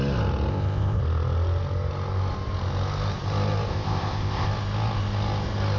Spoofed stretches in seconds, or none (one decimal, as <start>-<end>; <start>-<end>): 0.5-1.0; 3.7-4.5